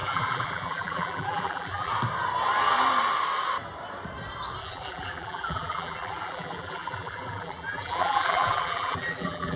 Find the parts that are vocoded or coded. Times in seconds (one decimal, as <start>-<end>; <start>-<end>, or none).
0.0-1.9; 4.6-9.6